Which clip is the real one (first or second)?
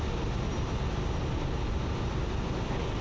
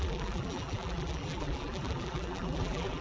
first